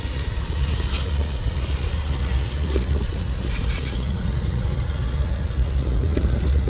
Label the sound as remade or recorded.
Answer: remade